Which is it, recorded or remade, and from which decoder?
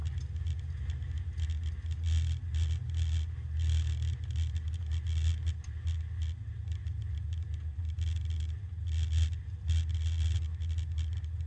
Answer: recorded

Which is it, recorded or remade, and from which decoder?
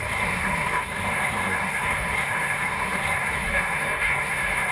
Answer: remade, codec, SNAC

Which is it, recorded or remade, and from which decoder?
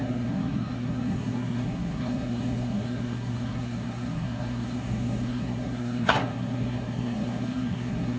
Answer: remade, codec, SNAC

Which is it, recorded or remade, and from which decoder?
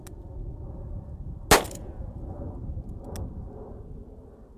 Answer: recorded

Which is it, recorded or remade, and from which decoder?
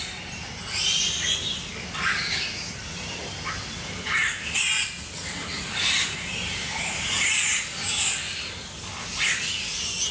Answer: recorded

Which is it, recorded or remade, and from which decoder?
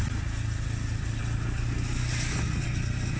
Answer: recorded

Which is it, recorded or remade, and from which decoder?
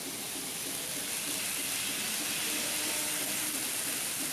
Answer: recorded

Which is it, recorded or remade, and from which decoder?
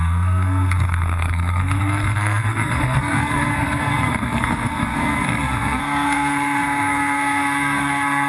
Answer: remade, codec, SNAC